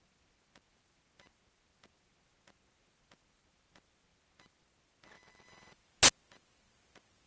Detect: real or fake real